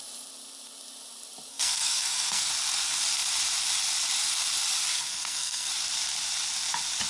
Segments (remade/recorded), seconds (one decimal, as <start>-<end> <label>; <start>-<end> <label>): 0.0-1.5 recorded; 1.5-2.5 remade; 2.5-4.9 recorded; 4.9-5.7 remade; 5.7-7.1 recorded